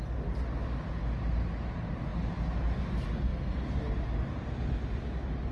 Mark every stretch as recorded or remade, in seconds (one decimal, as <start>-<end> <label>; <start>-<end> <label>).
0.0-5.5 recorded